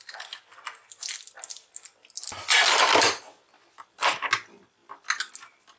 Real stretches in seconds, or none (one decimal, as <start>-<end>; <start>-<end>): 0.0-5.8